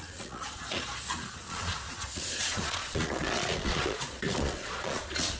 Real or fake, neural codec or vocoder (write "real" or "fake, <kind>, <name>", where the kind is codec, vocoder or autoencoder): fake, vocoder, Vocos